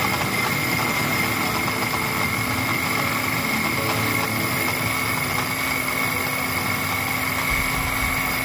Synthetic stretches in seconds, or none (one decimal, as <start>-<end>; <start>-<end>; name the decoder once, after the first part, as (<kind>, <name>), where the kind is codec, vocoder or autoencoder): none